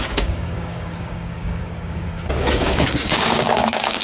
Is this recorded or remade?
remade